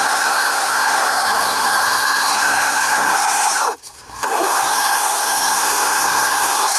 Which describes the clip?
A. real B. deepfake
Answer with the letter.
B